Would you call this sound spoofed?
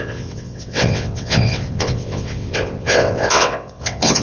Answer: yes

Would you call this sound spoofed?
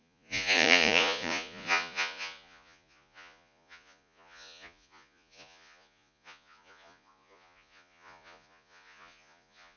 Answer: yes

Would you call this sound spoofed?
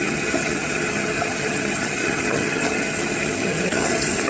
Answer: yes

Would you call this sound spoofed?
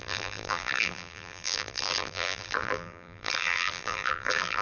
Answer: yes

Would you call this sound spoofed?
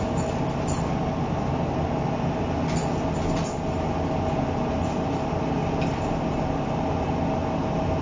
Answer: no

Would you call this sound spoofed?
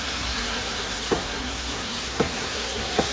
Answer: yes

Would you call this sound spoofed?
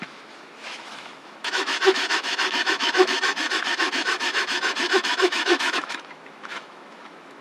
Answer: yes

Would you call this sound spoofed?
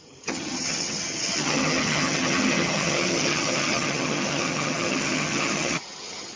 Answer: yes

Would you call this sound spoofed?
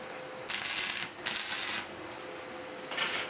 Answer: no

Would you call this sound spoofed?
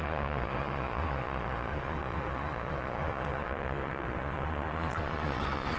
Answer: yes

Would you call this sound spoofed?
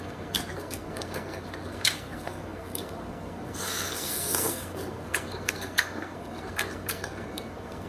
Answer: yes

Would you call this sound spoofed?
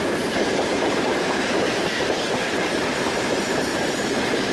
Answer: yes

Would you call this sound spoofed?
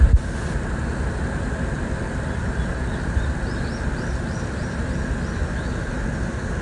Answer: no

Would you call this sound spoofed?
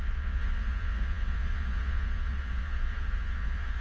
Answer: yes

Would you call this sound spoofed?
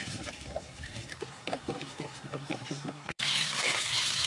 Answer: yes